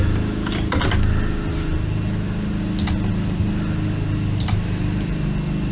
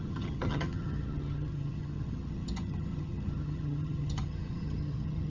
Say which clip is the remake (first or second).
second